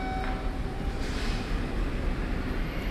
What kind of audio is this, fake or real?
real